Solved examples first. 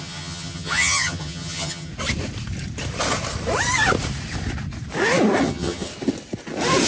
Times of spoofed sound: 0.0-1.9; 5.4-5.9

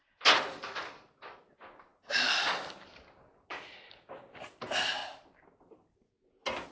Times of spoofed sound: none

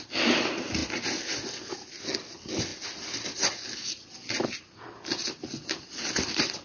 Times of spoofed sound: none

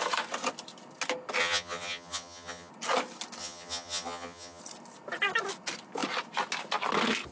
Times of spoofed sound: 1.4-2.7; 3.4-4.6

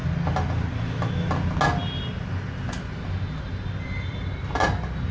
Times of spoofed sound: none